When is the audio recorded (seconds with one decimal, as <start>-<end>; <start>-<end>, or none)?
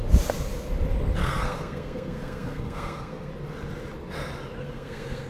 0.0-1.2; 3.3-4.6